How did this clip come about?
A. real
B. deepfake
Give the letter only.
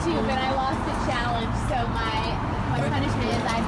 A